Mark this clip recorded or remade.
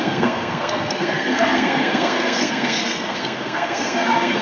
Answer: remade